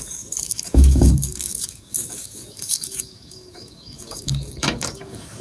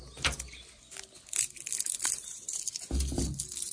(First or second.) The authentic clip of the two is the second